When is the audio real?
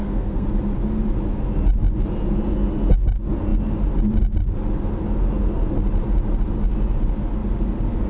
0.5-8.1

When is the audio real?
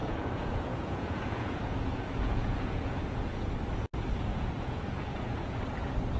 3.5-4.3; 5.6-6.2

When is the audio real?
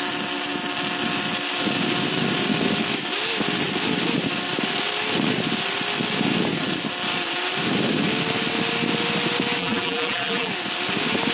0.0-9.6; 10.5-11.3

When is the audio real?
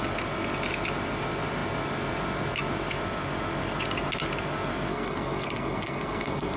0.0-4.9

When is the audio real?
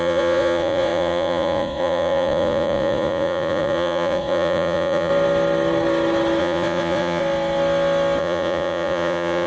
5.1-6.4; 7.2-8.2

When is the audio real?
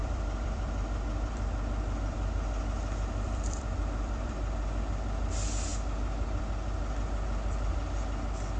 4.8-8.6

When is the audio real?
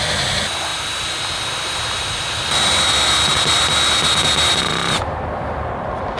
0.0-6.2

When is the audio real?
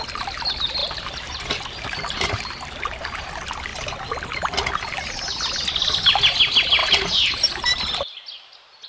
0.0-0.8; 3.3-6.8; 7.9-8.9